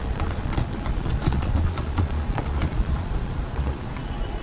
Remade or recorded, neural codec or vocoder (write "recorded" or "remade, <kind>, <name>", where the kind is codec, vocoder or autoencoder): remade, vocoder, Vocos